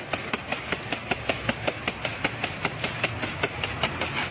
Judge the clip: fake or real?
real